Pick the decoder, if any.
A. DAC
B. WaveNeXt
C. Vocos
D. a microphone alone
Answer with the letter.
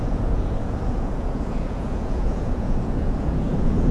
C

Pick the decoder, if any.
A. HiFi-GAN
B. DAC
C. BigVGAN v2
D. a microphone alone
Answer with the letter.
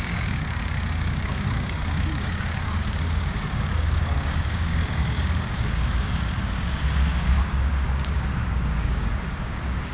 B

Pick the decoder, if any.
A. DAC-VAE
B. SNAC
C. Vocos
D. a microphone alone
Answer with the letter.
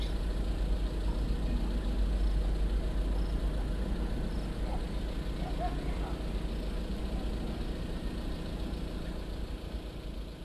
D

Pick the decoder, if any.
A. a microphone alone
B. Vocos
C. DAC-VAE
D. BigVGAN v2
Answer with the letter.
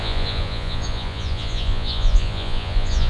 B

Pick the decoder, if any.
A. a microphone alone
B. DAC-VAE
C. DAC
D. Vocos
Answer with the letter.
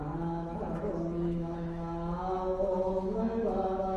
B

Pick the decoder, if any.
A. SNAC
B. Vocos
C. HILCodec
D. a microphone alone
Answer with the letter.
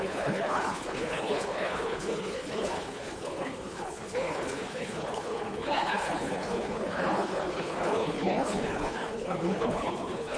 C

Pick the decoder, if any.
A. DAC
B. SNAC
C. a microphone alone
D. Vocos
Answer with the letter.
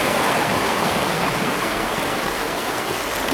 B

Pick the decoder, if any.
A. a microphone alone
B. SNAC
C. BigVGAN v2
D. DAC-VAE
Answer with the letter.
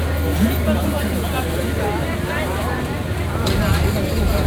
A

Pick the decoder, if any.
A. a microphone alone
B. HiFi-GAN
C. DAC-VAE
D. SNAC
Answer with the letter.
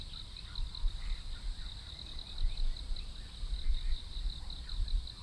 A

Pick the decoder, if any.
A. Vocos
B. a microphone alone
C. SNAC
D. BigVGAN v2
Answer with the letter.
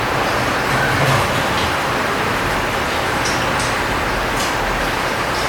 D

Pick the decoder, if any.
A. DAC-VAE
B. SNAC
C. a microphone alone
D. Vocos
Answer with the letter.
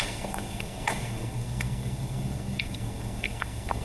B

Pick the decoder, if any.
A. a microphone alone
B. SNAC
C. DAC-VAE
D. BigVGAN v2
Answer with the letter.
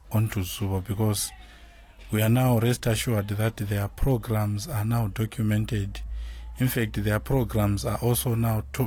A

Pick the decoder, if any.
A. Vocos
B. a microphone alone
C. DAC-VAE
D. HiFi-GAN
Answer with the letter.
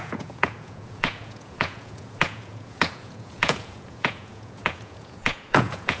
A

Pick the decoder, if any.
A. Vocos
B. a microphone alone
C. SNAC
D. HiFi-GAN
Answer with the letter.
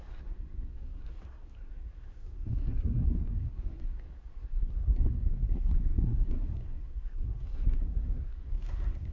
C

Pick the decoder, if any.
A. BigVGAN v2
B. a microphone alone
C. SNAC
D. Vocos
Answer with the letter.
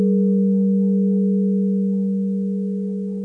B